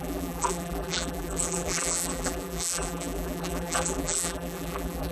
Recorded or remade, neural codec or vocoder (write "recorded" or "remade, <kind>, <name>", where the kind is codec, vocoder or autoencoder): remade, vocoder, BigVGAN v2